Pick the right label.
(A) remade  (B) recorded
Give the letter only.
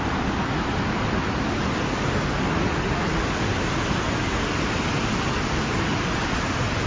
B